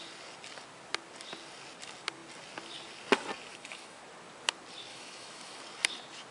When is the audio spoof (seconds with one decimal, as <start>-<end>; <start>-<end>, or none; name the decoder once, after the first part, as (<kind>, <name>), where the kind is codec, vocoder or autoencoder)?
3.5-4.0 (autoencoder, DAC-VAE); 4.9-5.6